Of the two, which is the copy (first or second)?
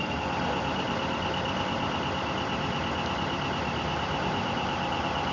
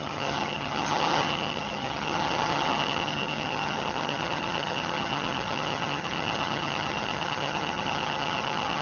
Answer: second